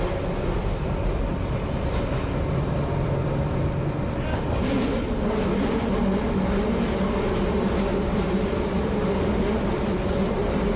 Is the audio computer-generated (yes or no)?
no